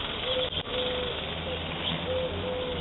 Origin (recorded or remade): recorded